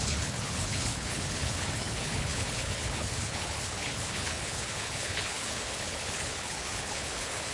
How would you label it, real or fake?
fake